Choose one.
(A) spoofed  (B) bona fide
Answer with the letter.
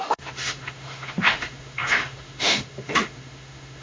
A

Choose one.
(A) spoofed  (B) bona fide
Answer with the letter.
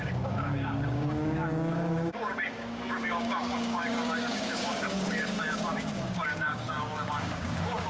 A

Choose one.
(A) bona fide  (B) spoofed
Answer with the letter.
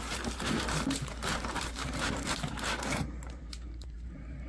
B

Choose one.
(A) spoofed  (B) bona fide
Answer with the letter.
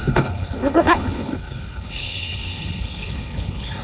A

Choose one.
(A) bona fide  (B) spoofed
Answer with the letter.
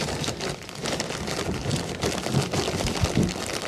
A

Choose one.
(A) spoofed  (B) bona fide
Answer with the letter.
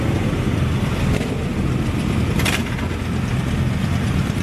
B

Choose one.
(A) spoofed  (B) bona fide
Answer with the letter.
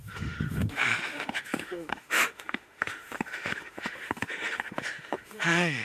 A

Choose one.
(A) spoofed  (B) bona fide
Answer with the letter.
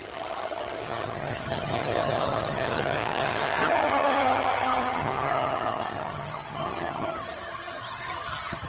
A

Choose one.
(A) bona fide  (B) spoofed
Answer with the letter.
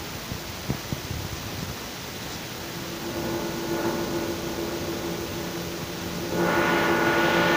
A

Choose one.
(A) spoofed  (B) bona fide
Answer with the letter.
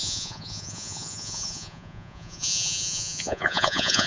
A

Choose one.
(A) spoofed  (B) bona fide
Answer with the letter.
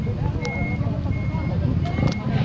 B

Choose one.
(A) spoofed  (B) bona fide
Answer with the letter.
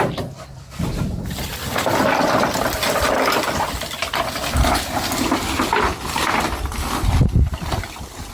B